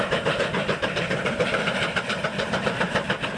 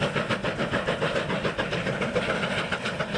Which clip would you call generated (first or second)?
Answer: first